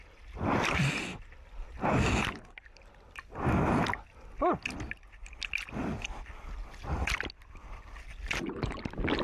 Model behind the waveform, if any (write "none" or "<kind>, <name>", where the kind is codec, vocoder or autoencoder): none